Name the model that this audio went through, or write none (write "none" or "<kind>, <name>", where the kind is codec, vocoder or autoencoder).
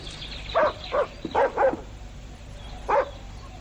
vocoder, BigVGAN v2